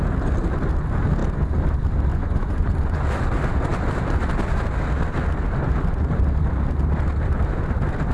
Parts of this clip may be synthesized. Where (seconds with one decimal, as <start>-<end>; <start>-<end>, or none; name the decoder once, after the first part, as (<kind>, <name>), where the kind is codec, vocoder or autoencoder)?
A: 2.1-3.0 (vocoder, Vocos)